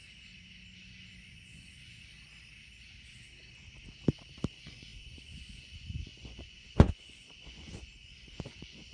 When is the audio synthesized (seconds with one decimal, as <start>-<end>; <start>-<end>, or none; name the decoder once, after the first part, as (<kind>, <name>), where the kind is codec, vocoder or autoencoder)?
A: 1.2-1.9 (vocoder, Vocos); 4.5-8.9